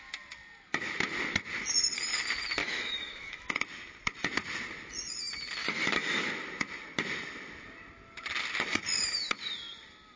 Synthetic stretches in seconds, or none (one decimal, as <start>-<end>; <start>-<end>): 2.6-3.6; 5.6-6.3